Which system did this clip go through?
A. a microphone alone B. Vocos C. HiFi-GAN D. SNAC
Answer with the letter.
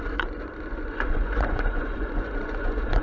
B